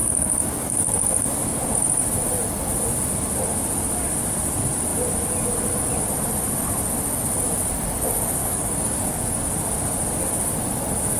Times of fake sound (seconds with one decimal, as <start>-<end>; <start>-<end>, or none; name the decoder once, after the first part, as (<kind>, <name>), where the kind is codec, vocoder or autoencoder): 0.0-1.7 (codec, DAC); 8.4-9.4